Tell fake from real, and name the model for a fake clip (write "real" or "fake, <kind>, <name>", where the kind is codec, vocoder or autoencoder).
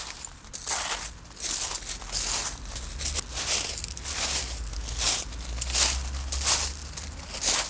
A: real